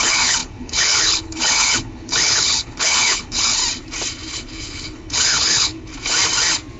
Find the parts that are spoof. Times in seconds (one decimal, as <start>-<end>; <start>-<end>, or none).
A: 0.0-3.6; 4.3-5.9